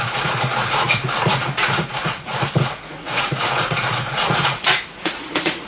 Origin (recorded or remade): remade